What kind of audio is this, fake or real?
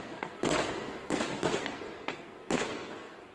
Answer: fake